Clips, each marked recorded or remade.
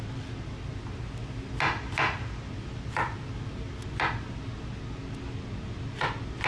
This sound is recorded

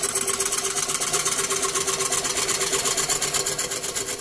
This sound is recorded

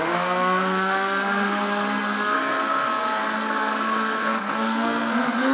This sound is remade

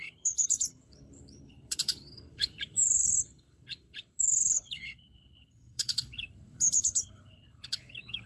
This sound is remade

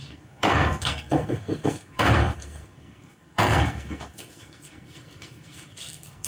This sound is remade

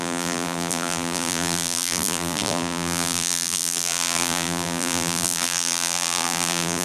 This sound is remade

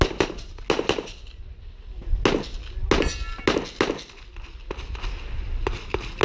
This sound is recorded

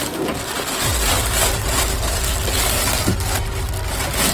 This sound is recorded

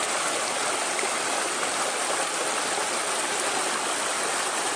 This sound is recorded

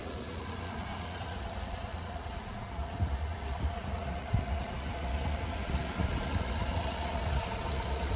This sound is remade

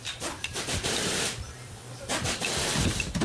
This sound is recorded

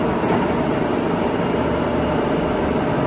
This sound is recorded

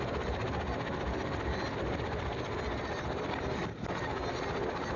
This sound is recorded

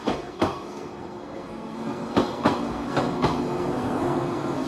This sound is remade